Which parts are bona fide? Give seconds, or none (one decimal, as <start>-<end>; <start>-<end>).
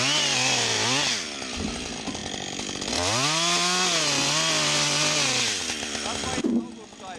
0.0-7.2